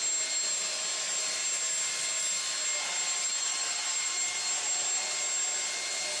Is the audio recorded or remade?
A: recorded